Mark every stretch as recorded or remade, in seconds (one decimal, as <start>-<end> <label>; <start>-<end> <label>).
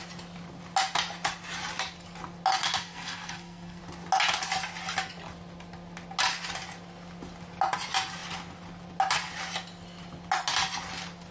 0.0-2.6 recorded; 2.6-3.8 remade; 3.8-11.3 recorded